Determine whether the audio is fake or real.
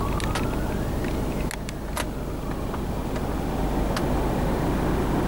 real